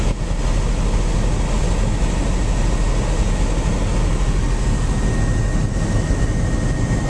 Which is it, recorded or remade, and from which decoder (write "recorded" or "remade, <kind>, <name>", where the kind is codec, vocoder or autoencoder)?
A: recorded